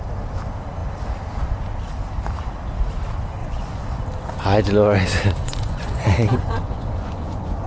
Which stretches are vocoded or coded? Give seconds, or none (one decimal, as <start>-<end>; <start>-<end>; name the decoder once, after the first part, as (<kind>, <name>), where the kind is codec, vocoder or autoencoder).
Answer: 3.4-4.0 (vocoder, Vocos); 5.4-7.7